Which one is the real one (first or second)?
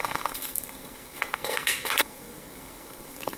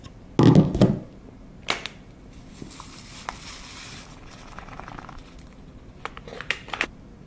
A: second